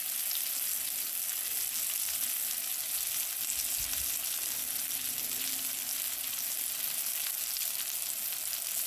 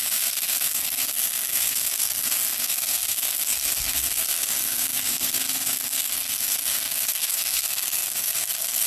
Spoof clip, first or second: second